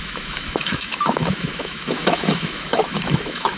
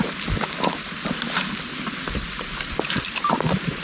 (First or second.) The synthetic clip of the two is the first